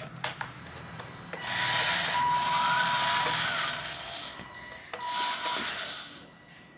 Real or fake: real